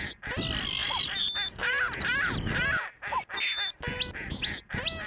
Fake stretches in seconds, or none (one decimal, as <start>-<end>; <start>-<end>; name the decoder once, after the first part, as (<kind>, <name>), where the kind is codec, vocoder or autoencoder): none